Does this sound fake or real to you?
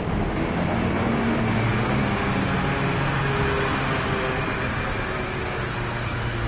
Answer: real